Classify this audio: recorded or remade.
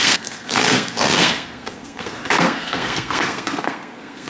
remade